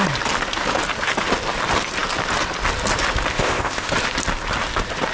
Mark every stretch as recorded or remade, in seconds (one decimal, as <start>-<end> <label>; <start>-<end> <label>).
0.0-3.3 recorded; 3.3-3.9 remade; 3.9-5.1 recorded